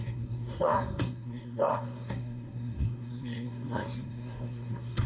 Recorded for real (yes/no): no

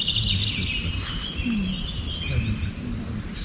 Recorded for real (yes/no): yes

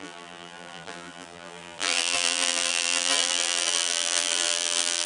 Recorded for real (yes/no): no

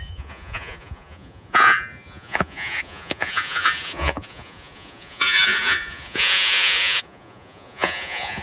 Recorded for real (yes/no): no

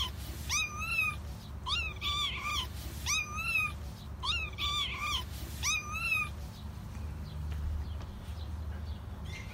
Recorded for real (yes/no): yes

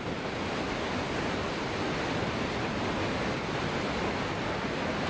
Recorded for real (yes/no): yes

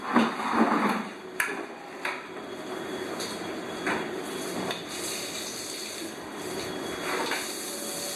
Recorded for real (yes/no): yes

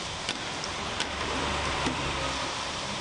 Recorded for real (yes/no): no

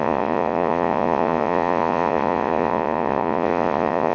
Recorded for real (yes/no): no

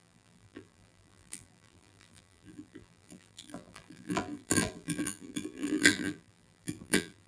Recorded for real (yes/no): no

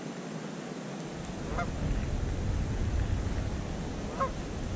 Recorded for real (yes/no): yes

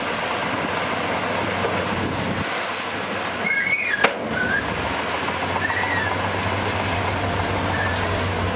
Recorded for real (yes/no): yes